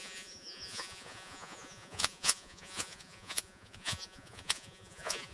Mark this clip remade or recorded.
remade